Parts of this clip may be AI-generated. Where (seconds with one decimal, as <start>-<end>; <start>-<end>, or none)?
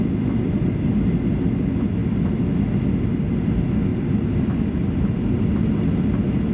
2.0-2.5; 3.9-5.9